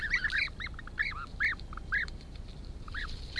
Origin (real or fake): fake